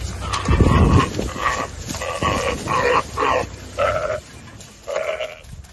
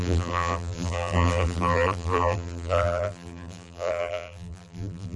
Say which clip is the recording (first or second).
first